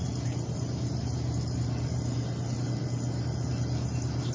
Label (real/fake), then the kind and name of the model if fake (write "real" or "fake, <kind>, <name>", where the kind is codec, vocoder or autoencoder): real